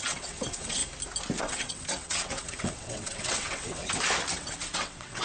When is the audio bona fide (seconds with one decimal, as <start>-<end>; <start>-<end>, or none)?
0.8-1.4; 3.8-4.3